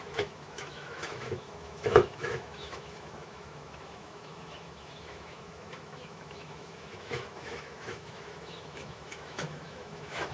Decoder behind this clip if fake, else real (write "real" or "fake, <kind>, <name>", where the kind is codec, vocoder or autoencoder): fake, autoencoder, DAC-VAE